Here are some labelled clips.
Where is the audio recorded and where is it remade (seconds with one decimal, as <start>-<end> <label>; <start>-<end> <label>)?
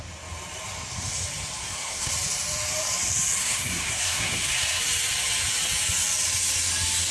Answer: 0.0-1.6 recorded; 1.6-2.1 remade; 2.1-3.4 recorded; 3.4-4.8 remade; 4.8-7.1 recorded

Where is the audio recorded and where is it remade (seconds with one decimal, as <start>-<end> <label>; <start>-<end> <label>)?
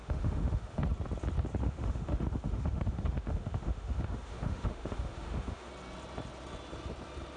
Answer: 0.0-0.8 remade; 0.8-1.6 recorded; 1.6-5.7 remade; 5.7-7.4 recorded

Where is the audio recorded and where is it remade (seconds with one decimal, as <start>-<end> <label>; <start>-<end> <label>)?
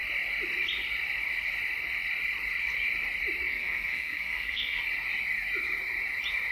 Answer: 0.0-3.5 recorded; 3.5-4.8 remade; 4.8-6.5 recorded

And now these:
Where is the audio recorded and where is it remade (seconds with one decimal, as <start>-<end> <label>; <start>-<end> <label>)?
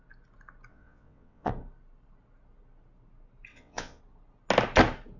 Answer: 0.0-0.7 recorded; 0.7-1.5 remade; 1.5-3.5 recorded; 3.5-4.0 remade; 4.0-5.2 recorded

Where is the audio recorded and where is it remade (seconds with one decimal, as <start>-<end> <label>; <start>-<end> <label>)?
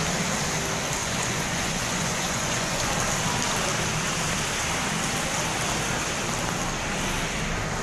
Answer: 0.0-1.0 recorded; 1.0-2.9 remade; 2.9-7.8 recorded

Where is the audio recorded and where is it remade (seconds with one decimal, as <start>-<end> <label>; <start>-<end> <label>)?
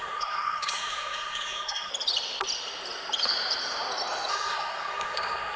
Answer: 0.0-1.9 remade; 1.9-4.3 recorded; 4.3-5.6 remade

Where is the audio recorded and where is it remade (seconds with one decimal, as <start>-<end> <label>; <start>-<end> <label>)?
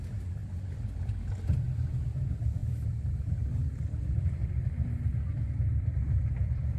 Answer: 0.0-6.8 recorded